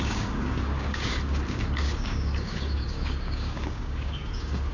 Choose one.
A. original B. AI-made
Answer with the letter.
B